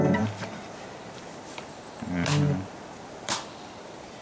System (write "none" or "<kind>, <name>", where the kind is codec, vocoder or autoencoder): vocoder, BigVGAN v2